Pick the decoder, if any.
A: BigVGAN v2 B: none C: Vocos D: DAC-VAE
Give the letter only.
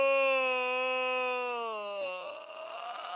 B